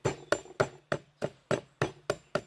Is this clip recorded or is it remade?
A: recorded